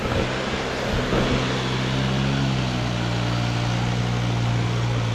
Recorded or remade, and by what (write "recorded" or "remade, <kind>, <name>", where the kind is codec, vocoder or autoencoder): recorded